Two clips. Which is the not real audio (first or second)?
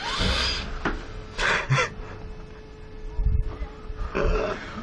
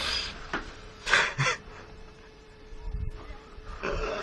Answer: second